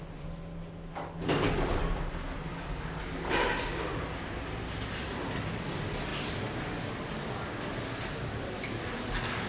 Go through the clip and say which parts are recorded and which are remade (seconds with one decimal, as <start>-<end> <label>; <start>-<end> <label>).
0.0-0.9 recorded; 0.9-1.7 remade; 1.7-2.5 recorded; 2.5-3.0 remade; 3.0-9.5 recorded